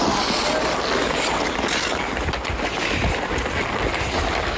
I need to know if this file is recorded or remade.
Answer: recorded